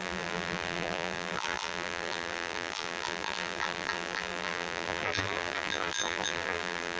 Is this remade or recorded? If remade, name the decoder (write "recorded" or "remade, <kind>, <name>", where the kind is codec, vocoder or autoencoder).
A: remade, vocoder, BigVGAN v2